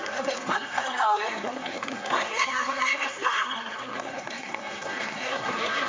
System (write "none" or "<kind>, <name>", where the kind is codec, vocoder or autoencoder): codec, SNAC